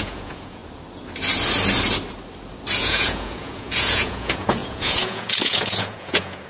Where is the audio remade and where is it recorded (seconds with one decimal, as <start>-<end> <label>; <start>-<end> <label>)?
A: 0.0-0.6 remade; 0.6-2.8 recorded; 2.8-6.5 remade